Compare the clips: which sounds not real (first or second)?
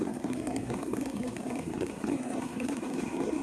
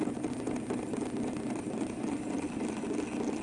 first